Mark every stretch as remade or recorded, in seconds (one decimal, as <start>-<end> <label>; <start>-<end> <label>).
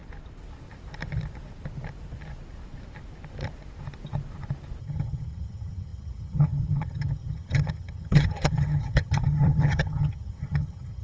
0.0-4.8 recorded; 4.8-11.0 remade